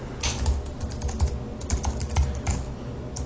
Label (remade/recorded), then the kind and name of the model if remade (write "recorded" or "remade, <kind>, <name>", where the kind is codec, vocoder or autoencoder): recorded